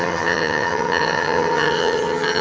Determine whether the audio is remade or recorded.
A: remade